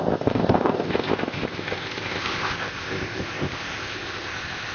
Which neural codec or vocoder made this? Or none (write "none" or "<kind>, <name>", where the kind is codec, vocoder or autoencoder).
codec, ZipCodec